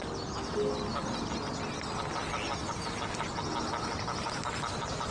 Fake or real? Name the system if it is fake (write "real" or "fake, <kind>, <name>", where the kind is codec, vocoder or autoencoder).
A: real